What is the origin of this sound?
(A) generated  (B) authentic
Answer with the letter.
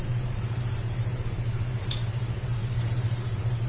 A